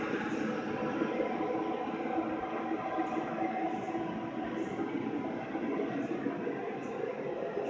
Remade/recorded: recorded